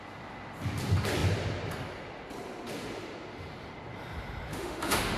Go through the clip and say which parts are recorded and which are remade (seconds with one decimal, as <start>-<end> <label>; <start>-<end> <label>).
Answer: 0.0-4.5 recorded; 4.5-5.2 remade